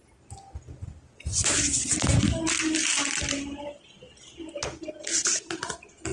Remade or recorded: recorded